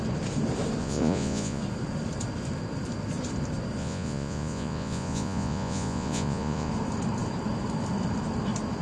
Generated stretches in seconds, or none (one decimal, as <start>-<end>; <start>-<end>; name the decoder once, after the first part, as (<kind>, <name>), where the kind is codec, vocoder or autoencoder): 0.8-1.6 (vocoder, Vocos); 3.8-6.7